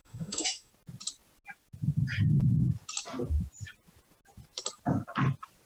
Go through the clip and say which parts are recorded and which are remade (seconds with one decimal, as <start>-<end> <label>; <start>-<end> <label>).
0.0-0.7 remade; 0.7-5.7 recorded